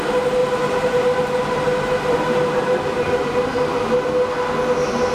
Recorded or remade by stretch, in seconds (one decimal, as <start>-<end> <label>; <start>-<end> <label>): 0.0-0.4 recorded; 0.4-3.5 remade; 3.5-5.1 recorded